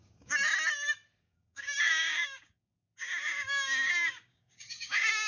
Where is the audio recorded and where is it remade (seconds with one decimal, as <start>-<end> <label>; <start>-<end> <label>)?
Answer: 0.0-0.4 remade; 0.4-1.2 recorded; 1.2-5.3 remade